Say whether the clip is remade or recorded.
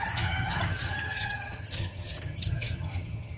remade